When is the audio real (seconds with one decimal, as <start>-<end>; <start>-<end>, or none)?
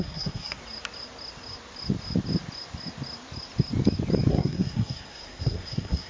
0.6-4.3